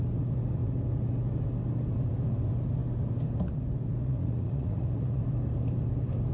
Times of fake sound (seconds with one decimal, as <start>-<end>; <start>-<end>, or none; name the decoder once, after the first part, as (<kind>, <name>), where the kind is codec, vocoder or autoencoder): 4.0-5.2 (vocoder, Vocos)